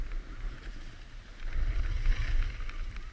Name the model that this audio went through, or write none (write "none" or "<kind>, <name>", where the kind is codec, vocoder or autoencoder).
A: none